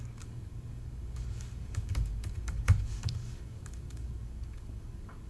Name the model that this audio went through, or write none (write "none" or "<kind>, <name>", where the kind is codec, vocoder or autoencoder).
codec, DAC